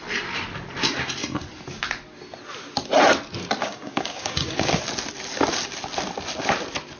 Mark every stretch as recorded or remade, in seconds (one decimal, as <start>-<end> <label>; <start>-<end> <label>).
0.0-3.6 recorded; 3.6-4.7 remade; 4.7-7.0 recorded